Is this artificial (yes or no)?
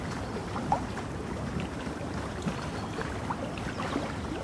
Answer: no